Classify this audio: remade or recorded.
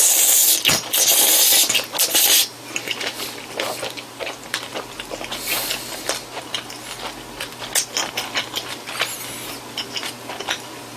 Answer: recorded